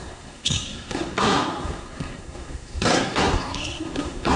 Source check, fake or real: fake